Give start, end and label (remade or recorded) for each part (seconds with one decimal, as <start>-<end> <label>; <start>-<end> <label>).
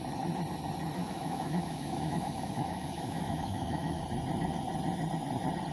0.0-1.0 recorded; 1.0-4.0 remade; 4.0-5.7 recorded